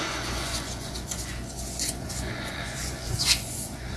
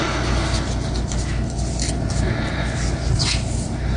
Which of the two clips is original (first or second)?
second